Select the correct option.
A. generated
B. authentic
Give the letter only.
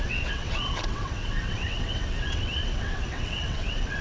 A